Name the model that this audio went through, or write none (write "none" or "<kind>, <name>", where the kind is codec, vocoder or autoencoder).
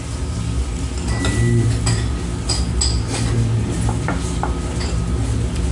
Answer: none